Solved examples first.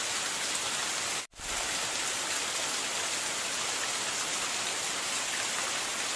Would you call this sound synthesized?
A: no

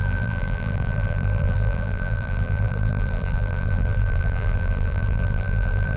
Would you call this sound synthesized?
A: yes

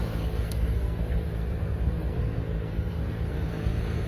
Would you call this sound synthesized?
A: yes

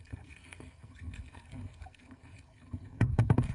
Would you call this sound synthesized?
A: yes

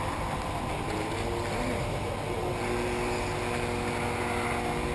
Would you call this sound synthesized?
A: no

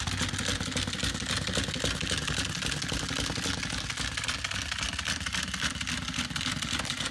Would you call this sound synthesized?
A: no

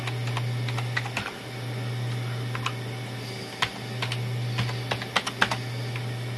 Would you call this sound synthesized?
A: no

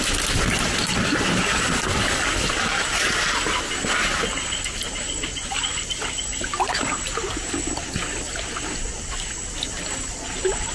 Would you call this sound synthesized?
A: no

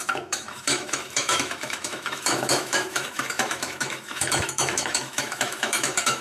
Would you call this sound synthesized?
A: yes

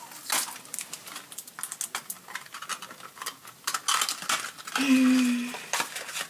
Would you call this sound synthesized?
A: no